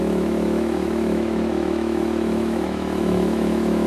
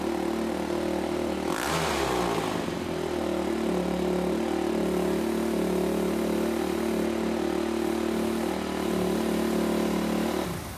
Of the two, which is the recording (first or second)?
second